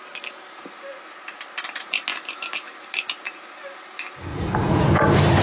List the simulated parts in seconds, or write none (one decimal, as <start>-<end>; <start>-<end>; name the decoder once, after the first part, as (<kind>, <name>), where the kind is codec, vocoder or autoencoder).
4.3-4.9 (vocoder, Vocos)